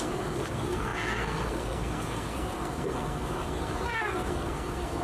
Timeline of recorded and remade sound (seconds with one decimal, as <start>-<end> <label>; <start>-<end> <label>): 0.0-5.0 remade